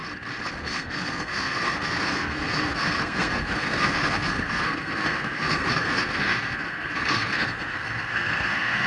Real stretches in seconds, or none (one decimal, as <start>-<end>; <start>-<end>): 0.0-0.6